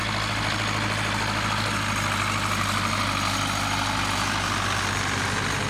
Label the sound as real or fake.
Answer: real